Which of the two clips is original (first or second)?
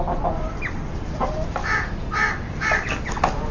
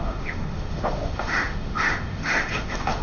first